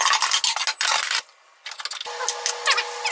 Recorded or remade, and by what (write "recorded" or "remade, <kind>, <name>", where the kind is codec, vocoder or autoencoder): recorded